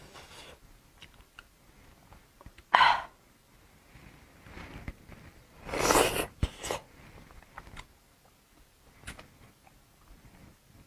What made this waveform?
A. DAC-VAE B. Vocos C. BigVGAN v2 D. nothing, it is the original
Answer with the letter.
D